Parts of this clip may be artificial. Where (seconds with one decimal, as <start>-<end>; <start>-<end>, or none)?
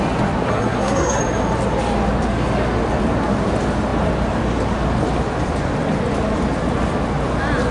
0.5-1.2